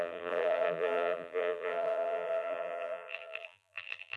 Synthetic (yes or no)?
yes